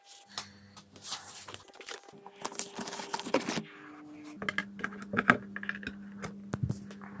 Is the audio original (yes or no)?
yes